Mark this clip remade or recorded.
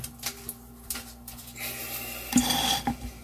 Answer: recorded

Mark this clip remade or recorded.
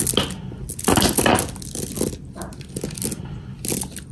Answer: recorded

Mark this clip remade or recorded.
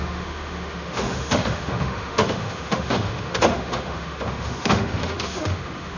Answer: remade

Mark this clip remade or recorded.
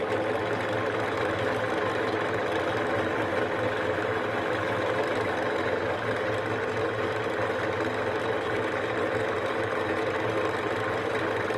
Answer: recorded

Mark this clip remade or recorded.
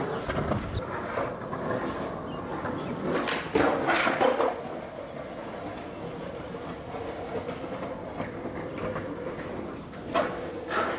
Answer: recorded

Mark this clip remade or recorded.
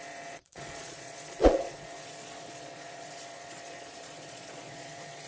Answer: remade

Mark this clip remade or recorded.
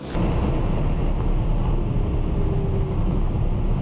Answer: recorded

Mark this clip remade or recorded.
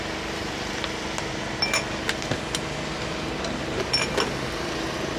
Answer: recorded